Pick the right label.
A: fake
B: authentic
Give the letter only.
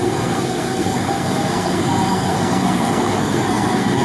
A